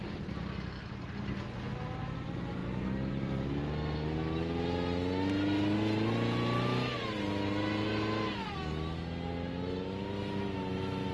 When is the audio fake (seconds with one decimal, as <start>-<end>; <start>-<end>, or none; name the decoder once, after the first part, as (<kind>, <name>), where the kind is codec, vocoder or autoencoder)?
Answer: none